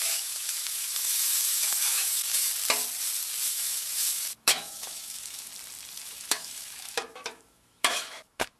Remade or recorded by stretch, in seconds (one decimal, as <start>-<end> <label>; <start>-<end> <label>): 0.0-2.5 remade; 2.5-3.5 recorded; 3.5-5.5 remade; 5.5-6.0 recorded; 6.0-8.6 remade